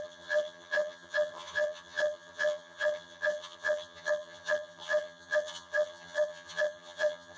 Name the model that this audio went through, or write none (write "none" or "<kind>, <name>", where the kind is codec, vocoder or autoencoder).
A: vocoder, HiFi-GAN